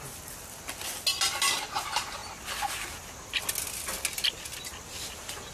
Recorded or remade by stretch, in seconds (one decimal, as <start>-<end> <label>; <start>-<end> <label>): 0.0-5.5 recorded